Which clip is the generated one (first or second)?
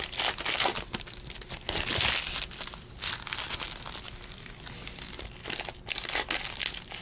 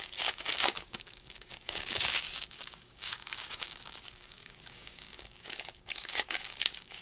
second